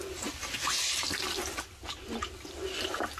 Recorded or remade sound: remade